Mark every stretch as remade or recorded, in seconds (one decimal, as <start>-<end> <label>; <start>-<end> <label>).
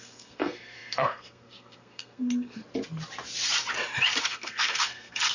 0.0-2.6 remade; 2.6-4.2 recorded; 4.2-5.3 remade